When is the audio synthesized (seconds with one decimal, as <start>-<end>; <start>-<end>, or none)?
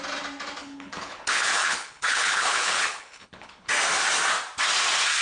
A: 0.6-3.7